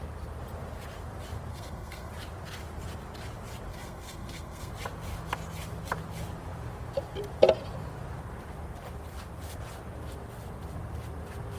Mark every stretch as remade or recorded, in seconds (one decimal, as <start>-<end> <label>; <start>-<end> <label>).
0.0-1.5 recorded; 1.5-2.1 remade; 2.1-3.7 recorded; 3.7-4.7 remade; 4.7-11.6 recorded